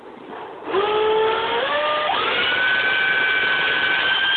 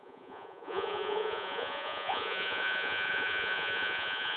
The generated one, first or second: second